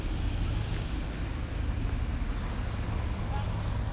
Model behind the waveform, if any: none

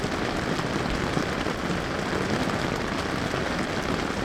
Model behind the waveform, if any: none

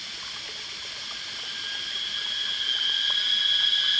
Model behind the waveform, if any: none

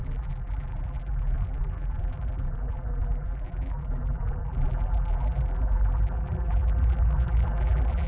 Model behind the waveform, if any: vocoder, BigVGAN v2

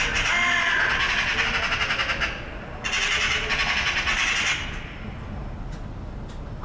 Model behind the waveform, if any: none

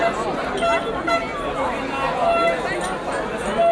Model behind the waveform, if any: none